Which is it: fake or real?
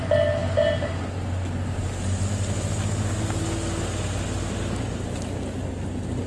real